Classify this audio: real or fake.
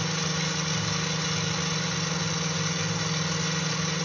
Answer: real